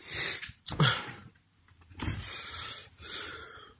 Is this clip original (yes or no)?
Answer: no